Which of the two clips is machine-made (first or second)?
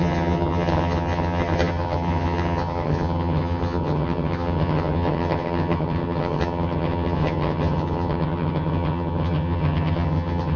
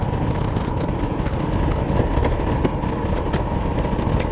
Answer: first